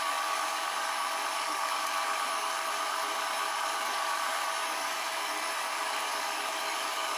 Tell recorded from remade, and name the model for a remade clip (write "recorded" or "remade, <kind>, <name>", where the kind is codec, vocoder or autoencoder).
remade, codec, DAC